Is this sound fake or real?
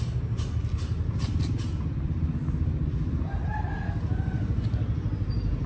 real